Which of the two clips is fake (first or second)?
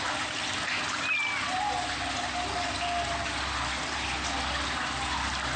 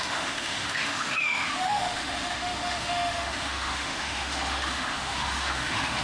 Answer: second